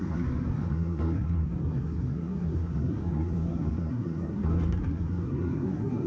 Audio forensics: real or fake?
fake